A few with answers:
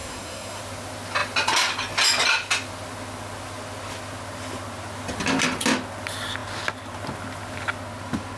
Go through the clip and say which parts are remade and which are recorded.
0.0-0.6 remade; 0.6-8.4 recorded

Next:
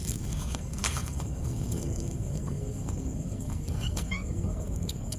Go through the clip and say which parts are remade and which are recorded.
0.0-5.2 remade

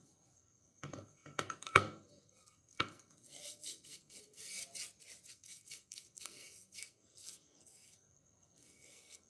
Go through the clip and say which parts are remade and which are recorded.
0.0-4.6 remade; 4.6-5.3 recorded; 5.3-9.3 remade

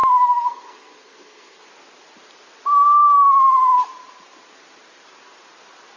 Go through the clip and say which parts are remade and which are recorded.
0.0-1.6 remade; 1.6-6.0 recorded

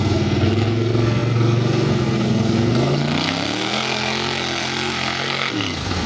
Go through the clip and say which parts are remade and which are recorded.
0.0-6.1 remade